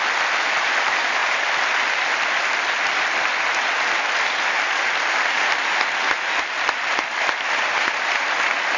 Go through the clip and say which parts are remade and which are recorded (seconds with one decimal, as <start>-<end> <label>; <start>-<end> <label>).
0.0-8.8 recorded